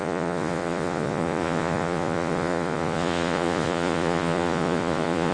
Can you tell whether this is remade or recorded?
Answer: remade